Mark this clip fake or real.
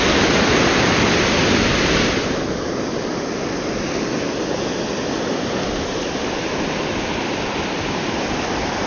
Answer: real